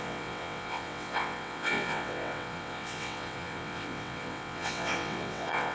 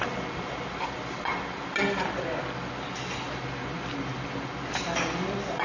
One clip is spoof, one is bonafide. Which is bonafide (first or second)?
second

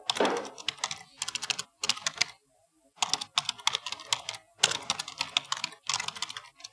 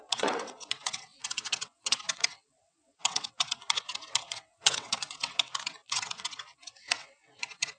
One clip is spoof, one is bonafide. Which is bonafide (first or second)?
first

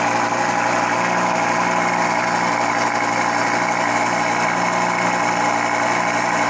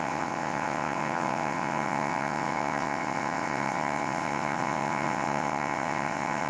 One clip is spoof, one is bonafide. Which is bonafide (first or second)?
first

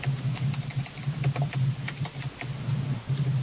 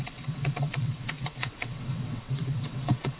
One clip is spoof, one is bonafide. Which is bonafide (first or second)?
first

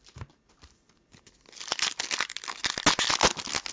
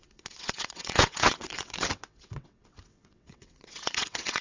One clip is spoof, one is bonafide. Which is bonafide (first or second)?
first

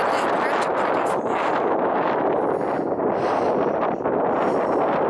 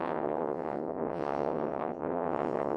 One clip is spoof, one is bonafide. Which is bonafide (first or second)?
first